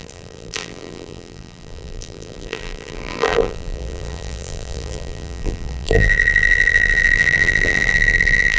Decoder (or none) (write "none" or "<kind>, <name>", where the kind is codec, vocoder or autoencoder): vocoder, BigVGAN v2